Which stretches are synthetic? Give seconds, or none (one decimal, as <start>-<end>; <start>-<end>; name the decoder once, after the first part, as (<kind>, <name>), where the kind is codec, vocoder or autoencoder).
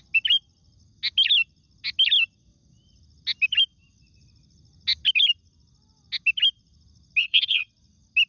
7.2-7.7 (vocoder, WaveNeXt)